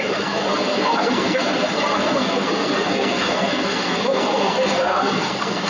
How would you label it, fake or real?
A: fake